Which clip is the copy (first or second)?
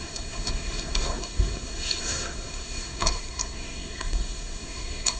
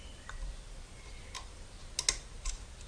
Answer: first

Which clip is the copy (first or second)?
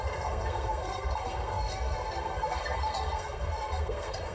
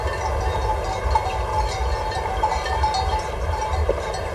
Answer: first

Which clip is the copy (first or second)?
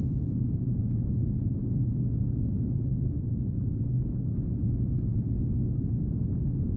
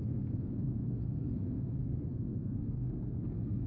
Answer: second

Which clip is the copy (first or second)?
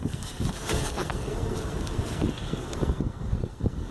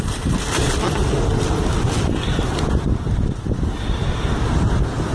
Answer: first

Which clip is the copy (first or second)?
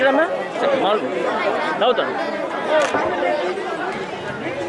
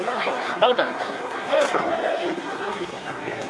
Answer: second